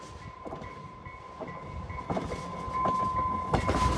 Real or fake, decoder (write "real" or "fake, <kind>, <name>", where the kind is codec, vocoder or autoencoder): real